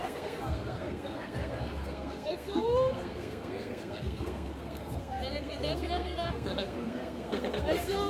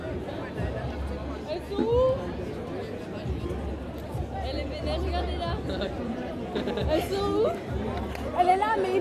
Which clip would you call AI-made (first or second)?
first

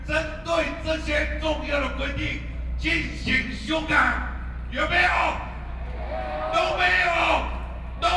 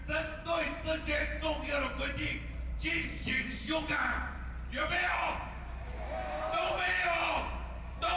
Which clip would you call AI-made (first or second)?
second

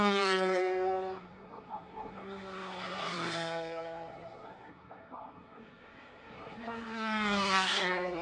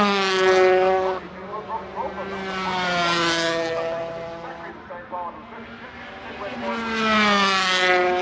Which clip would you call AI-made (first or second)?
first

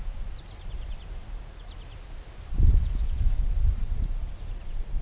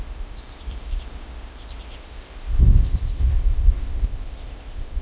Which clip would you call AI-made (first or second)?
second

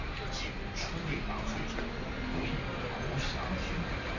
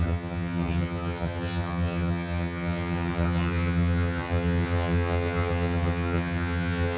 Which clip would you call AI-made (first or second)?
second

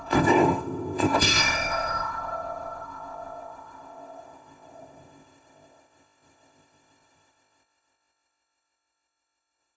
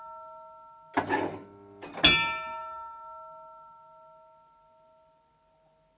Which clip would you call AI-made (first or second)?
first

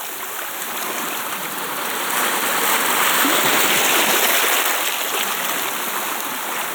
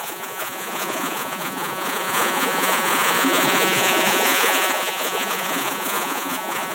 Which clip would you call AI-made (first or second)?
second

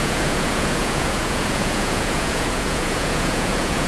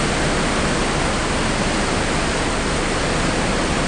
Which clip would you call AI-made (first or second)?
first